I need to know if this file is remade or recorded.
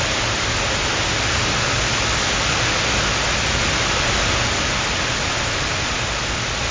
recorded